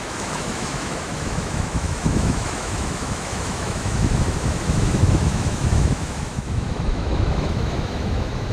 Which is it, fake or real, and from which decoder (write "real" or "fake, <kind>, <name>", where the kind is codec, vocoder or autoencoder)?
fake, autoencoder, DAC-VAE